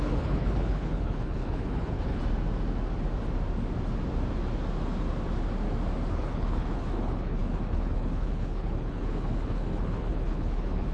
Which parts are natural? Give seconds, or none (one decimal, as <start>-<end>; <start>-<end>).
2.2-6.1